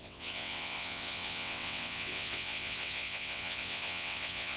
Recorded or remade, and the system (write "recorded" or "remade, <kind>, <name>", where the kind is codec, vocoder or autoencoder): remade, vocoder, WaveNeXt